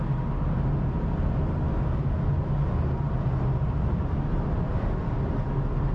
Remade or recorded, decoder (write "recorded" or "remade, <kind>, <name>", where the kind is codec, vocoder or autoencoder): recorded